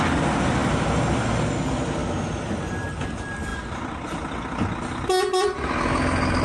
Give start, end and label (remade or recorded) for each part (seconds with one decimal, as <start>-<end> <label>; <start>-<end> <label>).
0.0-6.4 recorded